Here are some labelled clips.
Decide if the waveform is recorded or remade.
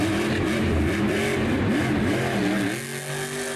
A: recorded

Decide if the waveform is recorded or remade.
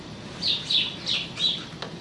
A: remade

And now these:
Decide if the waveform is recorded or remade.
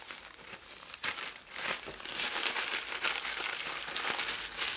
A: recorded